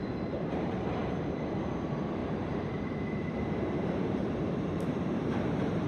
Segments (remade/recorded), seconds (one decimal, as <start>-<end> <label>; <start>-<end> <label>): 0.0-5.9 remade